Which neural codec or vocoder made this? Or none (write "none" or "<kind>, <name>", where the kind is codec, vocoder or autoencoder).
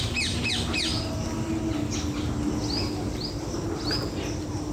none